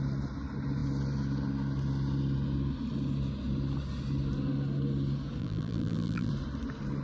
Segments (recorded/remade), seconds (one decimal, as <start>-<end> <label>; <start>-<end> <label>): 0.0-5.4 recorded; 5.4-6.3 remade; 6.3-7.0 recorded